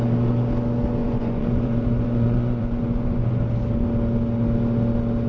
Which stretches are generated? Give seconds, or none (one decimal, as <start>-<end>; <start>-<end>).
1.0-3.4